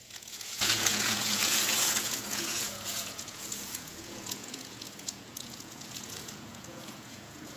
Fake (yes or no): yes